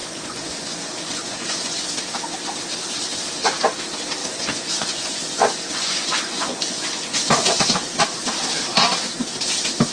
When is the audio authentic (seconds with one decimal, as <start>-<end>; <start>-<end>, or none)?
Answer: 1.8-4.2; 7.7-9.9